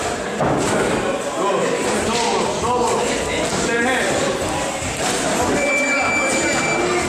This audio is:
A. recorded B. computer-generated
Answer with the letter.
A